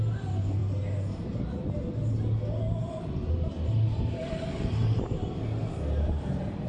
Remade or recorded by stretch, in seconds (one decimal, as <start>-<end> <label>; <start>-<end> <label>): 0.0-6.7 recorded

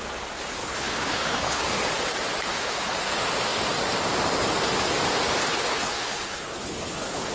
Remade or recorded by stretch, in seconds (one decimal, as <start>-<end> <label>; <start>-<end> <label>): 0.0-0.6 recorded; 0.6-1.6 remade; 1.6-2.5 recorded; 2.5-3.0 remade; 3.0-5.4 recorded; 5.4-7.3 remade

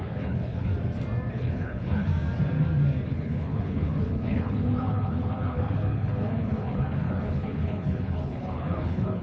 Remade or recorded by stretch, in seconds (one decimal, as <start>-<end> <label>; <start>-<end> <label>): 0.0-0.7 remade; 0.7-1.3 recorded; 1.3-2.1 remade; 2.1-3.1 recorded; 3.1-9.2 remade

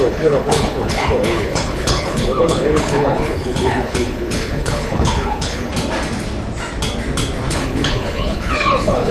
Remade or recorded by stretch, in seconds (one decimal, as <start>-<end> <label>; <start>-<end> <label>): 0.0-5.7 remade; 5.7-7.5 recorded; 7.5-9.1 remade

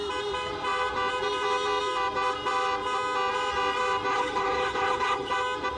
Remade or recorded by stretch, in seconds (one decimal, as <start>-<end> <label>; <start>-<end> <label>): 0.0-4.1 recorded; 4.1-5.3 remade; 5.3-5.8 recorded

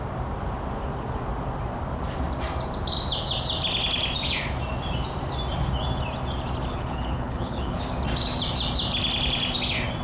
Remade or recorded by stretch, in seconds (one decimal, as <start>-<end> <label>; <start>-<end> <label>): 0.0-6.7 recorded; 6.7-7.8 remade; 7.8-10.0 recorded

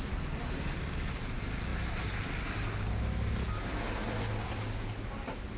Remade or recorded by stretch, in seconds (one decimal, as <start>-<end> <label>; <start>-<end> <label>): 0.0-5.6 recorded